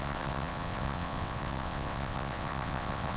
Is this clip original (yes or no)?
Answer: no